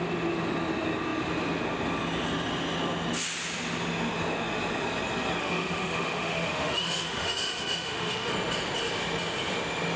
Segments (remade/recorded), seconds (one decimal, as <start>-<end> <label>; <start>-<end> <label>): 0.0-5.4 recorded; 5.4-8.3 remade; 8.3-10.0 recorded